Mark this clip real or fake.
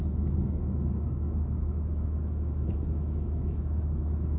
fake